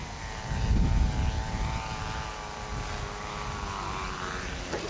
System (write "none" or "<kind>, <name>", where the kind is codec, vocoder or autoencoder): none